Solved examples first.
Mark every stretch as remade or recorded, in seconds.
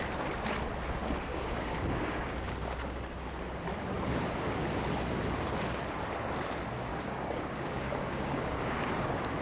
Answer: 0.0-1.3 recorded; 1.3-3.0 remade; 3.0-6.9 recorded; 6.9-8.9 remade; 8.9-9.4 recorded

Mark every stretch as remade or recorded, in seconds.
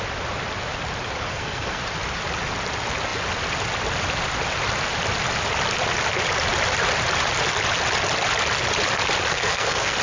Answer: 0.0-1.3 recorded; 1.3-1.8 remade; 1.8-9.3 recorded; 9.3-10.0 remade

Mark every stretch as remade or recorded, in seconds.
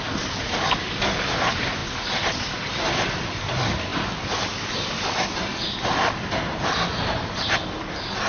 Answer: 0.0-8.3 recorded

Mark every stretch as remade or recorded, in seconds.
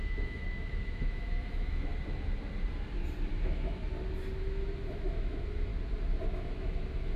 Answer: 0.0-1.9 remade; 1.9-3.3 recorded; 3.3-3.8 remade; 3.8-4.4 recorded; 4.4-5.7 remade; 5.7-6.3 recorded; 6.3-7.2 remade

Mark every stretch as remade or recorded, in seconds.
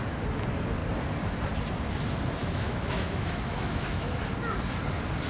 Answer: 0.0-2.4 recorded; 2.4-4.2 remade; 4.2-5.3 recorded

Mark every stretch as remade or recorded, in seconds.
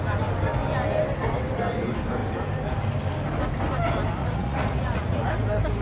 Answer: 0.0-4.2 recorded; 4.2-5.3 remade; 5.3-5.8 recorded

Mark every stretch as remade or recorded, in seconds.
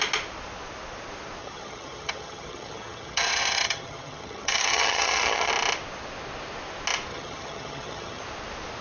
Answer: 0.0-1.4 recorded; 1.4-5.5 remade; 5.5-7.1 recorded; 7.1-8.2 remade; 8.2-8.8 recorded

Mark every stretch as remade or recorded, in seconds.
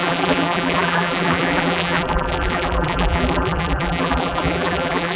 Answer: 0.0-5.2 remade